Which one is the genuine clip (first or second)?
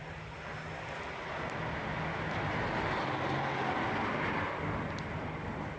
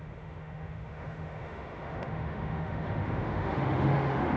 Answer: first